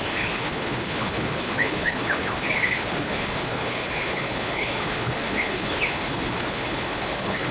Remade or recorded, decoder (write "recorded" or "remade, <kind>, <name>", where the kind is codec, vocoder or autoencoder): remade, codec, HILCodec